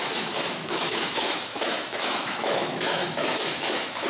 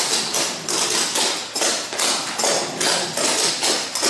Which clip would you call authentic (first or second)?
second